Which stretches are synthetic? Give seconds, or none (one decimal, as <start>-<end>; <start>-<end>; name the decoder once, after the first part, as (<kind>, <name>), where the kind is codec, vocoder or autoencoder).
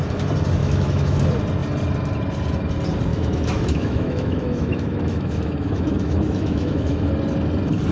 0.6-1.2 (autoencoder, DAC-VAE); 3.1-7.1